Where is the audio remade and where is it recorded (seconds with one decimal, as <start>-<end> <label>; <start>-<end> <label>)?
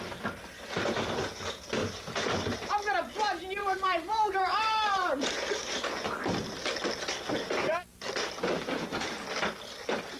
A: 0.0-1.8 recorded; 1.8-2.7 remade; 2.7-3.6 recorded; 3.6-5.7 remade; 5.7-7.9 recorded; 7.9-9.2 remade; 9.2-10.2 recorded